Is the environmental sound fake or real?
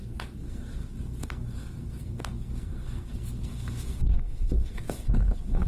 fake